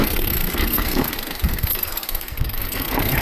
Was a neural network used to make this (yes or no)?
yes